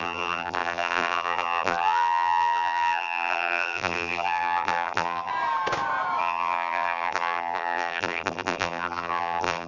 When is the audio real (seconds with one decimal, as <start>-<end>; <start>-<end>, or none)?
5.3-6.2